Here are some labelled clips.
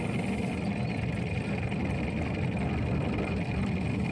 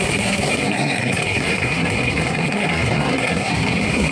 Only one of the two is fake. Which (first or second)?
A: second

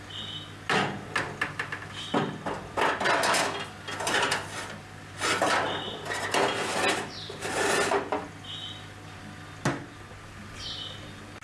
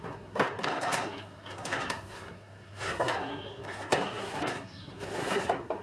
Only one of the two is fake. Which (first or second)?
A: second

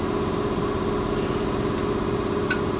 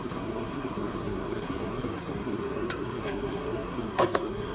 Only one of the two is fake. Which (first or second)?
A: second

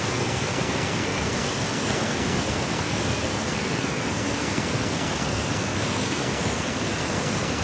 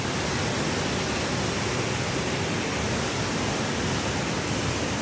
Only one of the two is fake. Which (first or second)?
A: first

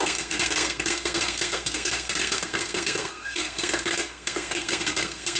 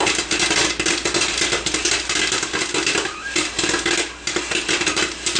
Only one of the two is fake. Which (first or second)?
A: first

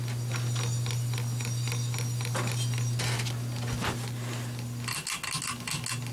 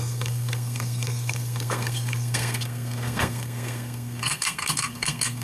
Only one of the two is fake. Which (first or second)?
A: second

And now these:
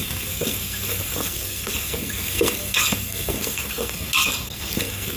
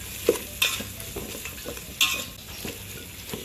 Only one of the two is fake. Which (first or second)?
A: first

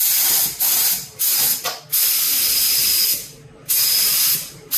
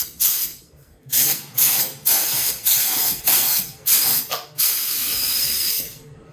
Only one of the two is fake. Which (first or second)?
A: second